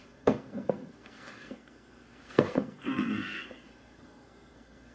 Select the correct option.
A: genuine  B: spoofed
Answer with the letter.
B